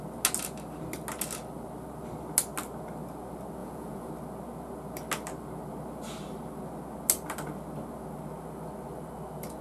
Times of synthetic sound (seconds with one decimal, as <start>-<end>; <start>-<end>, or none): 3.6-4.1